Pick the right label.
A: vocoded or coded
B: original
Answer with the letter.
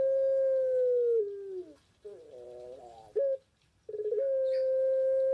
B